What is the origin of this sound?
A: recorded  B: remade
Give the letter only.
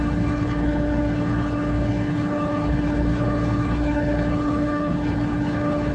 B